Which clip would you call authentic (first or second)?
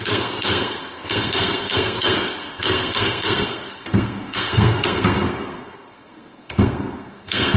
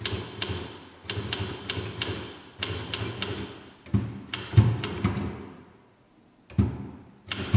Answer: second